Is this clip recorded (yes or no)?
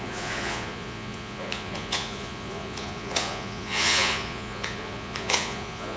no